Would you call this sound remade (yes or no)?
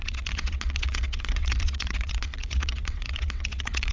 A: yes